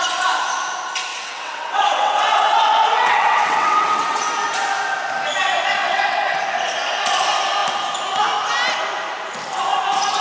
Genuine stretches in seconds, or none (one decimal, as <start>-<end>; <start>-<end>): 0.0-1.1; 4.3-5.8; 6.4-10.2